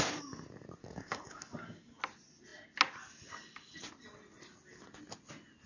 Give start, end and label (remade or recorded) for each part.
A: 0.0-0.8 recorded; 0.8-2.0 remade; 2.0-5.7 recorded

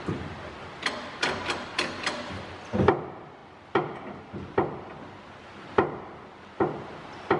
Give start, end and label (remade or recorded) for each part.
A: 0.0-7.4 recorded

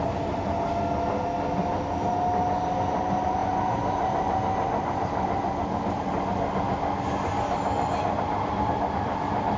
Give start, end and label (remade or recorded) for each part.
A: 0.0-9.6 recorded

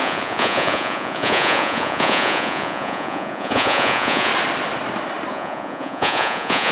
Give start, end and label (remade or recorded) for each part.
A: 0.0-4.3 remade; 4.3-5.3 recorded; 5.3-6.7 remade